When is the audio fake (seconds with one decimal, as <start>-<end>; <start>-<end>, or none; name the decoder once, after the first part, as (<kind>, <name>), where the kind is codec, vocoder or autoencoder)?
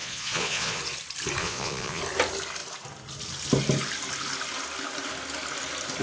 0.0-0.8 (vocoder, Vocos); 1.4-2.0